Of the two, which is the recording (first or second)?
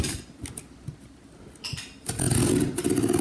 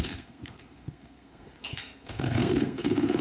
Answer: first